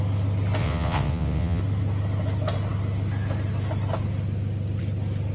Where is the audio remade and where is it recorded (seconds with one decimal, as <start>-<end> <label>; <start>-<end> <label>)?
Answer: 0.0-0.6 recorded; 0.6-1.6 remade; 1.6-5.3 recorded